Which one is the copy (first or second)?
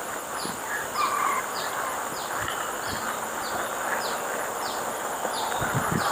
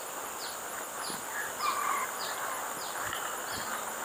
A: first